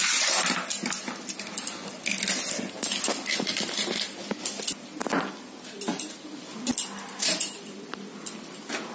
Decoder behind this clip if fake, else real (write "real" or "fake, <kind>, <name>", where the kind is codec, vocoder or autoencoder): real